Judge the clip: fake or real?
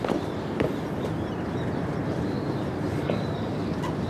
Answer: fake